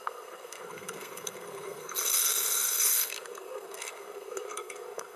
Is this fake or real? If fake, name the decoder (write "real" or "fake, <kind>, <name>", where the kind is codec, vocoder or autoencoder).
fake, codec, SNAC